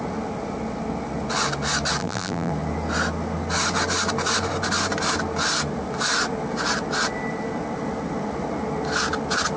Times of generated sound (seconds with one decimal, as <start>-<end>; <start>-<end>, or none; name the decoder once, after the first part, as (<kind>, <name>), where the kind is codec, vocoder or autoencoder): 2.0-2.5 (vocoder, BigVGAN v2)